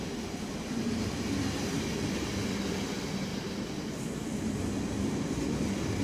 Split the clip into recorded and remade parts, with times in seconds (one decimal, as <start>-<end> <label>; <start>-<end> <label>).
0.0-3.3 recorded; 3.3-4.0 remade; 4.0-6.0 recorded